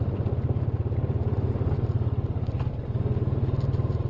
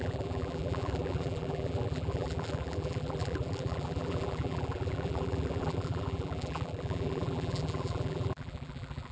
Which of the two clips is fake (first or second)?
second